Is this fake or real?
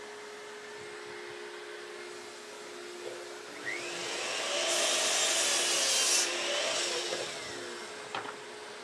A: real